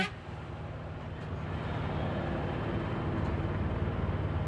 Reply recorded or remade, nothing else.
recorded